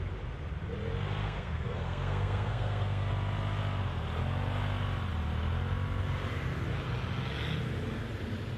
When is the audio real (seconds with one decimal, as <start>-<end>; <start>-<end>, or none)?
0.0-1.2; 3.1-8.6

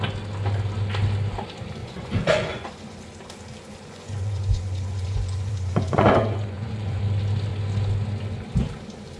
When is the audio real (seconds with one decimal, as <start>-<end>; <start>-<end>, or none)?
0.0-1.8; 3.0-3.7; 7.0-9.2

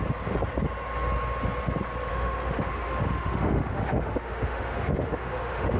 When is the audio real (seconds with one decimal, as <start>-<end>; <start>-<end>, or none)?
0.0-2.1

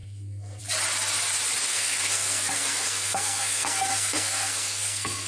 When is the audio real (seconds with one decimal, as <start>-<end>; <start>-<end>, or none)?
0.6-1.7

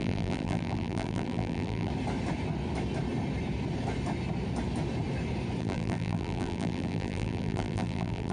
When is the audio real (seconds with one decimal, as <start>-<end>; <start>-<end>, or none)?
1.9-5.6

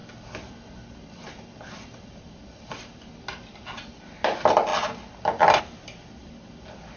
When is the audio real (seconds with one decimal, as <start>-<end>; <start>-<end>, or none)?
0.0-7.0

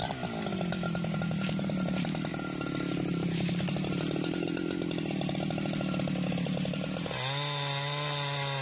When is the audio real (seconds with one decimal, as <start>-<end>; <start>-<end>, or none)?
0.0-8.6